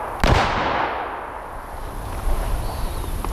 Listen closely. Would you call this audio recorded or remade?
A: recorded